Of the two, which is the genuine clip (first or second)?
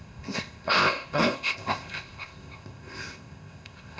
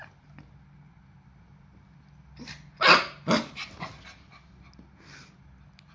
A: second